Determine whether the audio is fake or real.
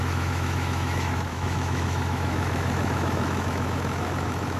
fake